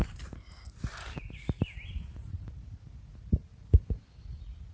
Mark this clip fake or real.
real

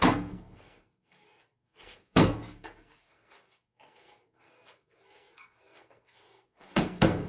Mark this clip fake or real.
fake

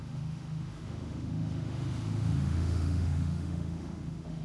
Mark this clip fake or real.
fake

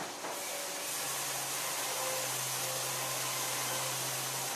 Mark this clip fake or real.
real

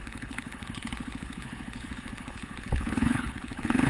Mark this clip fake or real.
fake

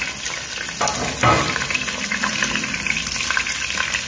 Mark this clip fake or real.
real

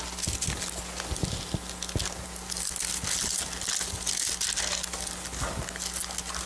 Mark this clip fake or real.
real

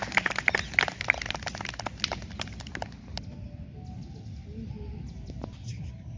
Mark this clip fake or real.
real